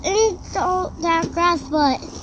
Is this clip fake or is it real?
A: real